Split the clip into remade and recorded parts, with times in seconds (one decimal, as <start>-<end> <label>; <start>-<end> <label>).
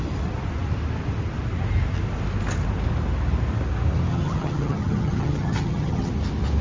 0.0-4.1 recorded; 4.1-6.1 remade; 6.1-6.6 recorded